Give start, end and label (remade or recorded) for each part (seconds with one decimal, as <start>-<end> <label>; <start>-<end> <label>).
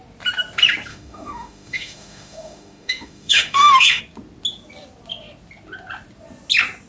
0.0-0.9 recorded; 0.9-4.0 remade; 4.0-6.9 recorded